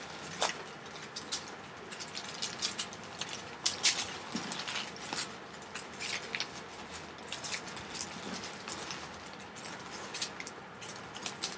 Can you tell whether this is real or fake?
real